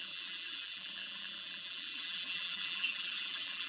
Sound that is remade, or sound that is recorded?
remade